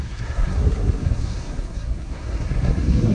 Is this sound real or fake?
fake